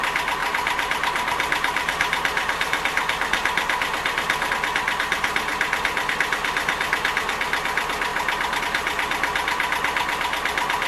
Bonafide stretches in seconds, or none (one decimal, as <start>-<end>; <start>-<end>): 0.0-0.4; 4.5-10.9